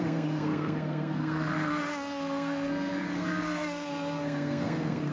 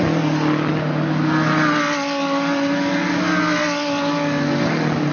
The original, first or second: second